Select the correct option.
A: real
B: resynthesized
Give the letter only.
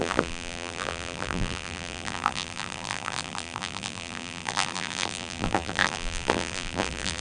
B